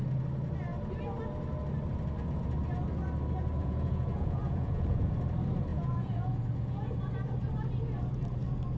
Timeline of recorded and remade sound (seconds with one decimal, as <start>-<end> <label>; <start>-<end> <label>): 0.0-3.6 recorded; 3.6-5.2 remade; 5.2-5.7 recorded; 5.7-7.1 remade; 7.1-8.8 recorded